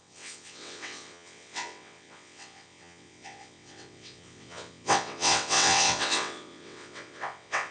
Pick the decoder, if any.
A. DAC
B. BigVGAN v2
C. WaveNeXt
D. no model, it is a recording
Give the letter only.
C